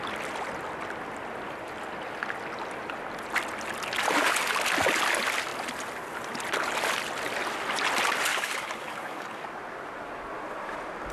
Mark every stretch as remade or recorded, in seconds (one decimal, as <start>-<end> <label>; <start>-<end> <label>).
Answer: 0.0-8.3 recorded; 8.3-9.5 remade; 9.5-11.1 recorded